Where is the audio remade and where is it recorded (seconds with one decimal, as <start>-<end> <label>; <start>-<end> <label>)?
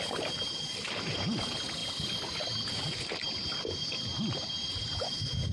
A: 0.0-5.5 recorded